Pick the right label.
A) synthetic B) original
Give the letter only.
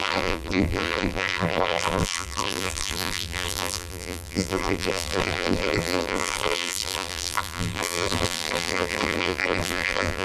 A